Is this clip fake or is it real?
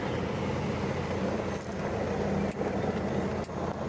real